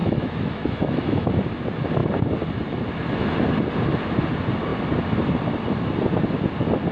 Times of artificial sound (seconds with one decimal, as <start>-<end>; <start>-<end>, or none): 0.0-1.3